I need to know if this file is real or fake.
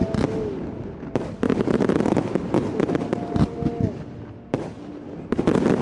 real